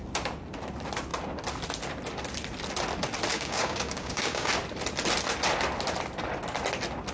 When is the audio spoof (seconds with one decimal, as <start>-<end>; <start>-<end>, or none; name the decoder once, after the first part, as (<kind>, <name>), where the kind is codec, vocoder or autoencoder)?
3.3-4.5 (codec, DAC)